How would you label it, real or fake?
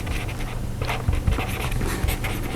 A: real